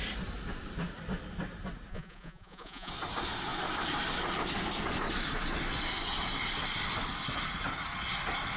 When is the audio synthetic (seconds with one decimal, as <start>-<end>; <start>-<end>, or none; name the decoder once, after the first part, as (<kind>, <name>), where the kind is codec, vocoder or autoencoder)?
1.9-2.9 (vocoder, Vocos)